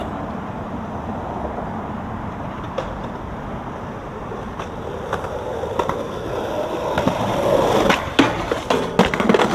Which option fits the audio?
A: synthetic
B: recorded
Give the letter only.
B